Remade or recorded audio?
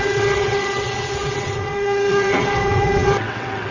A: remade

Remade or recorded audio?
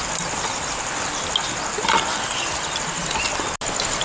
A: recorded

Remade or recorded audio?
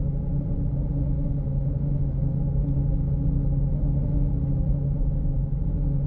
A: recorded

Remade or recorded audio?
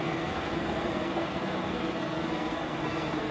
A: remade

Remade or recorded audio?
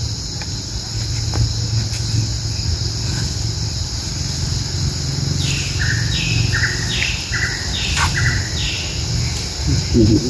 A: recorded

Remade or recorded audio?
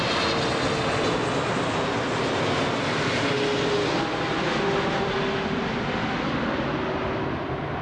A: recorded